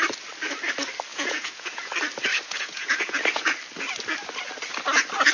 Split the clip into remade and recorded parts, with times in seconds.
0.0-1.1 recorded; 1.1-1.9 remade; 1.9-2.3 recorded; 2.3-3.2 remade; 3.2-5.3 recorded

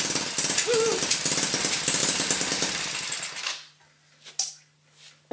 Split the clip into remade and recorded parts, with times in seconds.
0.0-5.3 recorded